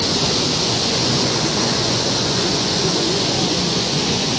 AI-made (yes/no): yes